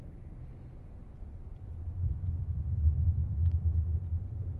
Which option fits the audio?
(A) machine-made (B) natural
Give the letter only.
B